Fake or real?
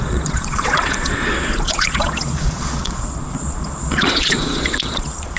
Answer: fake